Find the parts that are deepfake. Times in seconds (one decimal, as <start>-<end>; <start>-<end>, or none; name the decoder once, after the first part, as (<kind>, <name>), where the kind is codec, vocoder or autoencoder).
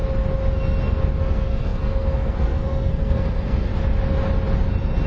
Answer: 1.2-3.7 (codec, SNAC)